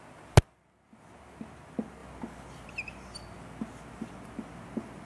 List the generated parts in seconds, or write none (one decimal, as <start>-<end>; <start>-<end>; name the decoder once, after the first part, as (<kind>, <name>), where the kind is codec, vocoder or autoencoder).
none